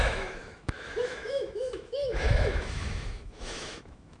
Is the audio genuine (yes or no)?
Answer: no